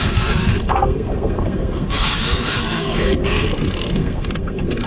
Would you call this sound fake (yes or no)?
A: yes